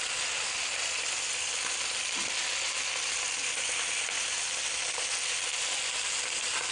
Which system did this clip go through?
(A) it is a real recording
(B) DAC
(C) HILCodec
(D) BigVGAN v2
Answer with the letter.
A